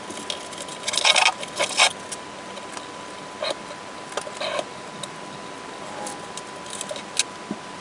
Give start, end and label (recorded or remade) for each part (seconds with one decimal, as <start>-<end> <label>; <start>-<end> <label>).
0.0-7.8 recorded